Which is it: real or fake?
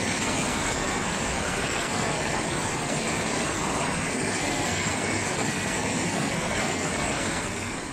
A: fake